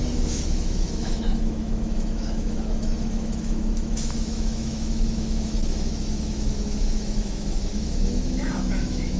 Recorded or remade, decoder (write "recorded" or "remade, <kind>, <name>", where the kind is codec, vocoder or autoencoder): remade, autoencoder, DAC-VAE